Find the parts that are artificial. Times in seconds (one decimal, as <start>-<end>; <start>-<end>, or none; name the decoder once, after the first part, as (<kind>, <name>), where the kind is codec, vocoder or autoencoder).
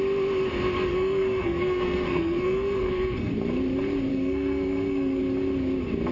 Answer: 0.9-3.3 (codec, SNAC); 4.1-5.2